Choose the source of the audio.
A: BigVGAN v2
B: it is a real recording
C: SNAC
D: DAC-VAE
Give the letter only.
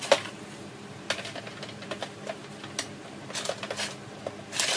B